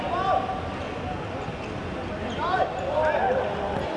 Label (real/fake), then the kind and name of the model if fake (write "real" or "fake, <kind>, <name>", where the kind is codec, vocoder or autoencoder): real